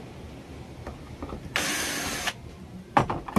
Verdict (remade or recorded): recorded